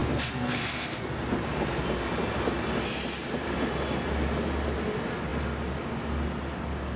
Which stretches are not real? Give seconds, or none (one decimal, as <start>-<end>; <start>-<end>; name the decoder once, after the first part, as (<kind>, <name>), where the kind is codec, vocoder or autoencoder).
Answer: 0.0-1.0 (codec, SNAC)